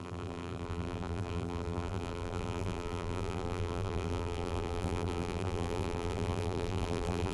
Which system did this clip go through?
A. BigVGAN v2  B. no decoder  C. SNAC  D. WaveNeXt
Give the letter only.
A